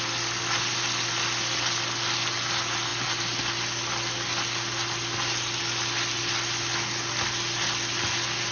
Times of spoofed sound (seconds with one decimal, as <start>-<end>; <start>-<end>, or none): none